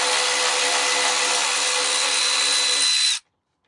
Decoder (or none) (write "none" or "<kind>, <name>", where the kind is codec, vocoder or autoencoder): none